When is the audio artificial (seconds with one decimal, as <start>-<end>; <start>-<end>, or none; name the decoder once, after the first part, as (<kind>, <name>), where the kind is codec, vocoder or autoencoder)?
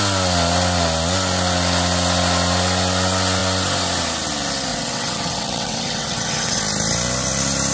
4.7-6.6 (vocoder, WaveNeXt)